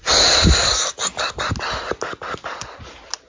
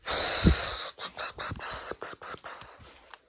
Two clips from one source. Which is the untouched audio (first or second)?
first